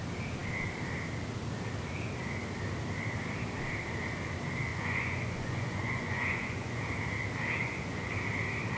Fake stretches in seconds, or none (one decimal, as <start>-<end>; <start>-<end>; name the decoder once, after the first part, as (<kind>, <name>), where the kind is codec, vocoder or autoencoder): 4.7-6.8 (vocoder, Vocos); 7.6-8.1